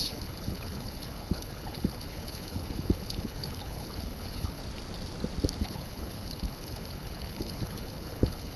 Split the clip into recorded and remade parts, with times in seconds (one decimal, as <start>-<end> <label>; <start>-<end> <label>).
0.0-4.6 remade; 4.6-5.6 recorded; 5.6-8.6 remade